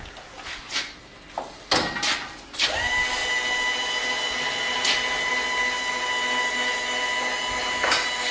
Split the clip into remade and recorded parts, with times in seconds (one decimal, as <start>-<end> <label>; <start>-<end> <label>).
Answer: 0.0-8.3 recorded